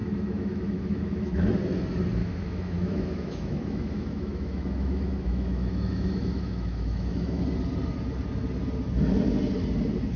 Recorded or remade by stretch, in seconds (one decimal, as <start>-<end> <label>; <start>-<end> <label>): 0.0-1.5 remade; 1.5-2.2 recorded; 2.2-7.4 remade; 7.4-10.2 recorded